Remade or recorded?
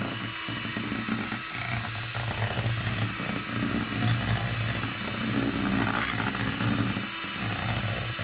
recorded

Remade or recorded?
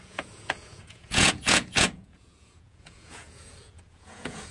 remade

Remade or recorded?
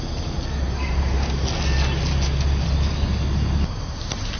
recorded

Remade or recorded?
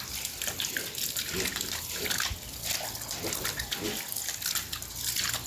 recorded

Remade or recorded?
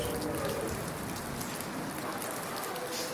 recorded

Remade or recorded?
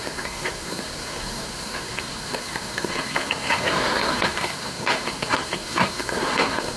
remade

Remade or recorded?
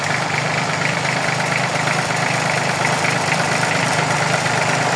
remade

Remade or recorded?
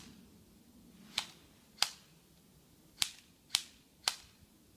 recorded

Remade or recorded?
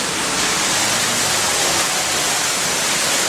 recorded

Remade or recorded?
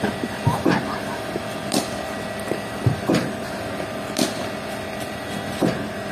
recorded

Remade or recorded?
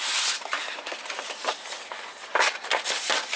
remade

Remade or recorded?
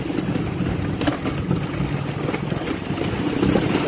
recorded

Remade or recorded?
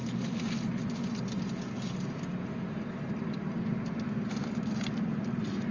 recorded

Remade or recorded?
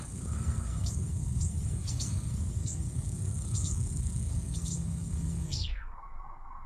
remade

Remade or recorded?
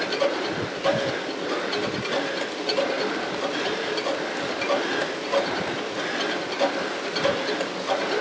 recorded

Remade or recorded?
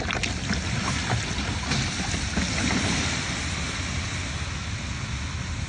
recorded